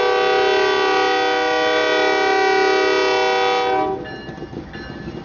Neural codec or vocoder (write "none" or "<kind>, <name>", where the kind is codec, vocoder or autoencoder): none